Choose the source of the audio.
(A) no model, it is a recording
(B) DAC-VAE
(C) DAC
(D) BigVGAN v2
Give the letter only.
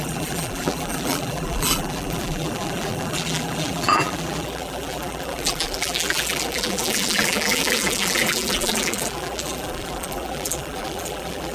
D